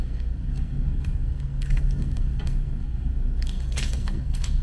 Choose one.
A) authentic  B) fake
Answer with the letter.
B